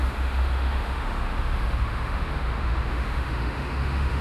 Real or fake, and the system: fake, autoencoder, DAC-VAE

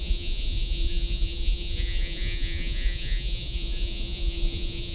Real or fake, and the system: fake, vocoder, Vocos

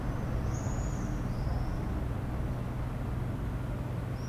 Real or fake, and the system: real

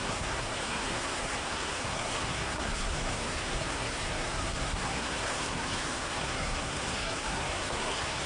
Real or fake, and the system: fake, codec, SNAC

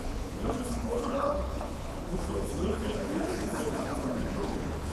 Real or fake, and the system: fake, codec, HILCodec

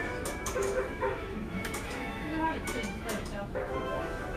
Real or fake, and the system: fake, autoencoder, DAC-VAE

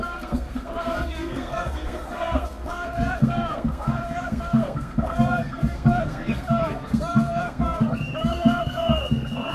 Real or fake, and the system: fake, codec, SNAC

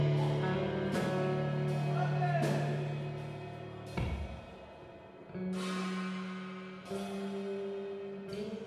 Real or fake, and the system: real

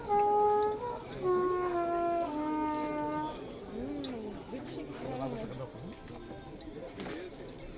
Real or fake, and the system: real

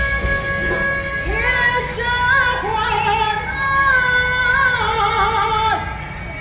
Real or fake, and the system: real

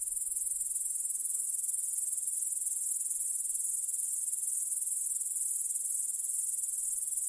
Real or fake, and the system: real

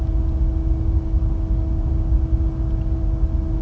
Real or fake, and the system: real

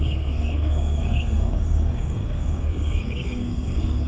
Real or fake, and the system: fake, codec, SNAC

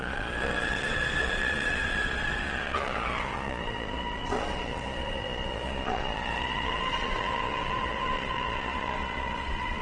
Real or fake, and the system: fake, vocoder, Vocos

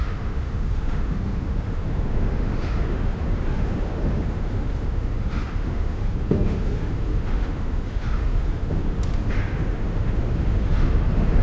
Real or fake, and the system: fake, autoencoder, DAC-VAE